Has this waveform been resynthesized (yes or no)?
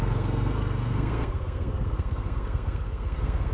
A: yes